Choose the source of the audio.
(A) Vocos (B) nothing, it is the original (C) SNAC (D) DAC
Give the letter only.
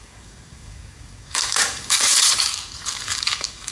D